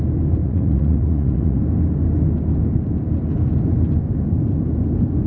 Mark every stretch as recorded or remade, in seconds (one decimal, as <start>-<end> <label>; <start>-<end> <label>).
0.0-0.4 recorded; 0.4-1.6 remade; 1.6-5.3 recorded

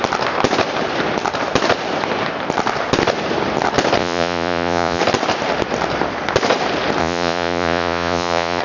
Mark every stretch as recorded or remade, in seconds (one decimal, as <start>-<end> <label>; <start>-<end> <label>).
0.0-4.0 recorded; 4.0-5.0 remade; 5.0-7.0 recorded; 7.0-8.6 remade

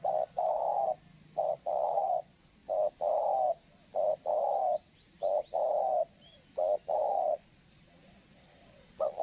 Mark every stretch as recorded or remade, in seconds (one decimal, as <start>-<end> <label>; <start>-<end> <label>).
0.0-0.5 remade; 0.5-1.4 recorded; 1.4-2.6 remade; 2.6-7.1 recorded; 7.1-9.2 remade

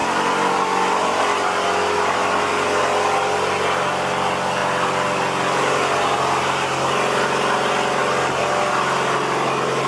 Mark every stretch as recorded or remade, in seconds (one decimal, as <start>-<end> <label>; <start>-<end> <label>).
0.0-9.9 recorded